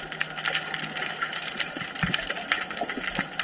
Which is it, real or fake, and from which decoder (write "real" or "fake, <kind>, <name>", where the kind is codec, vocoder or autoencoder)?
real